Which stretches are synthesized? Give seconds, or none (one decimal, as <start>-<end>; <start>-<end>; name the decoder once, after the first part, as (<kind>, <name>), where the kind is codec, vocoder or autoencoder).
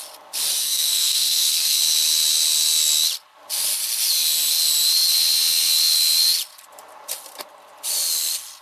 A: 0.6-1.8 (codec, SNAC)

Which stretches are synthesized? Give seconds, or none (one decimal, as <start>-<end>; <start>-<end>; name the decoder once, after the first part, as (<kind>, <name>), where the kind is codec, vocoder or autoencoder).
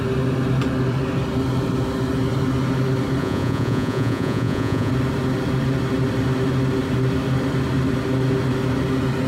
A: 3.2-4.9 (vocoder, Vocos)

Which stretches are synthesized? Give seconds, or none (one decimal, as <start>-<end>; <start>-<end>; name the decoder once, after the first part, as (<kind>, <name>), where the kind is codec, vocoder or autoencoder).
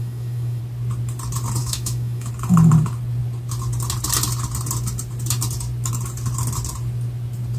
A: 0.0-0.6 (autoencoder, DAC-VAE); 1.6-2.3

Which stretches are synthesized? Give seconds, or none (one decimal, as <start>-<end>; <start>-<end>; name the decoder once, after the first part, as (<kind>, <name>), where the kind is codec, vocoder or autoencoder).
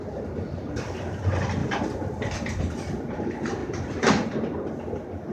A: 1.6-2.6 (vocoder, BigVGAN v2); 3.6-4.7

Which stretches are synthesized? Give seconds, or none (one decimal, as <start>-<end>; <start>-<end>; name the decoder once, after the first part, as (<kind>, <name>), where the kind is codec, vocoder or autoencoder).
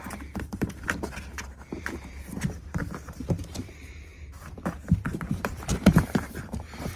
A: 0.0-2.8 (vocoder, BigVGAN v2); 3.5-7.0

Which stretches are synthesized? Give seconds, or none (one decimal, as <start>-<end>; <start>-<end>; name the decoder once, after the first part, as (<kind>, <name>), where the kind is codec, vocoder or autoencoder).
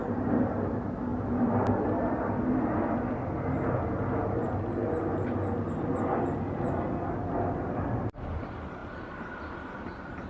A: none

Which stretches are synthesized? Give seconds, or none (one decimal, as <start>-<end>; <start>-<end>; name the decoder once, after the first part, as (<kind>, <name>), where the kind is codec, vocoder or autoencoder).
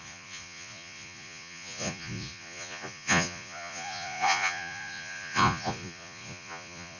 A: 0.0-7.0 (vocoder, Vocos)